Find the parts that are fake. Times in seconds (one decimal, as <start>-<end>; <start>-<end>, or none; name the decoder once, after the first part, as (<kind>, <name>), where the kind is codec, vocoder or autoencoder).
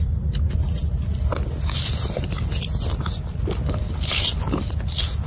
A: none